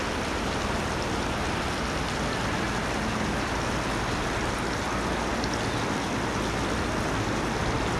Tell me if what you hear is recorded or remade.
recorded